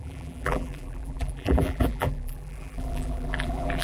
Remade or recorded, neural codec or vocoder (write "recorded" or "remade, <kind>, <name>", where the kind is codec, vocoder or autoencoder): remade, vocoder, BigVGAN v2